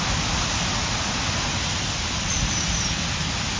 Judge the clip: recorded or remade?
recorded